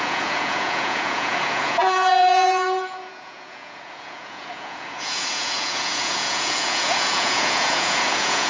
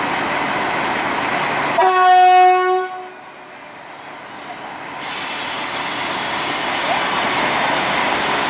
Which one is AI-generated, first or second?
first